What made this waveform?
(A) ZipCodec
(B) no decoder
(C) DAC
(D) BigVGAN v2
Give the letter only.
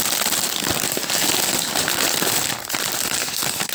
D